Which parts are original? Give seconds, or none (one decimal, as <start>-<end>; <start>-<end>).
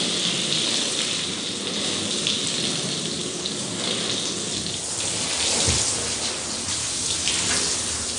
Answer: 0.0-3.2; 3.9-6.8; 7.3-8.2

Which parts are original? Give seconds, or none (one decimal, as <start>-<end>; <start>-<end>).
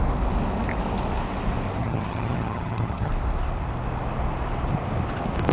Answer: 0.0-1.8; 3.1-5.5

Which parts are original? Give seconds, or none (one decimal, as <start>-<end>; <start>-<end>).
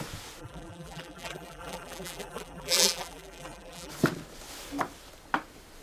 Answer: 0.0-0.4; 3.9-5.8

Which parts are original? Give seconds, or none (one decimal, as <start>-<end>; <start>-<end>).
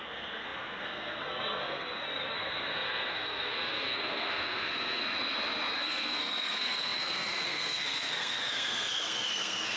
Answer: 5.0-5.8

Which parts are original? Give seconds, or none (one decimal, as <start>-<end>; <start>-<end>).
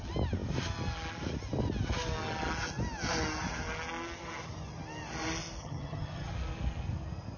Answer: 0.0-5.6; 6.3-7.4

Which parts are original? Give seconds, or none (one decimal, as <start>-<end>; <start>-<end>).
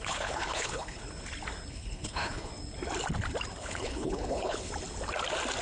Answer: 1.0-1.7; 2.5-3.6; 4.7-5.6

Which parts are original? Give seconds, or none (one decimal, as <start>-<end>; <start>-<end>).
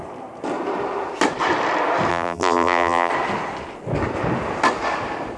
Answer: 0.0-2.1; 3.1-5.4